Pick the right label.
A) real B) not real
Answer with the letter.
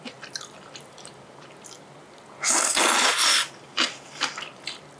B